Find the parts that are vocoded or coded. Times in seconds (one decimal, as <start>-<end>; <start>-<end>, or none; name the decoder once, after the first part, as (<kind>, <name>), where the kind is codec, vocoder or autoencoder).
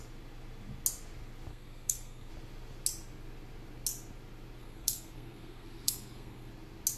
1.5-2.3 (codec, SNAC); 4.6-6.5